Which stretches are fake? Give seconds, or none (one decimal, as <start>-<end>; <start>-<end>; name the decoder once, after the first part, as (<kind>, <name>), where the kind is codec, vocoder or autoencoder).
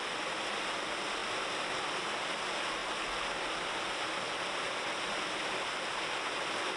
none